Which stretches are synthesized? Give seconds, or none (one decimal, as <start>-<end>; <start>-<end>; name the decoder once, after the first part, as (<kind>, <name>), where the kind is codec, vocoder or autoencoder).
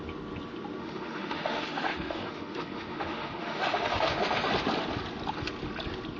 0.8-4.5 (autoencoder, DAC-VAE)